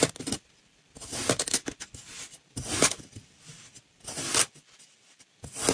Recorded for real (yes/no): yes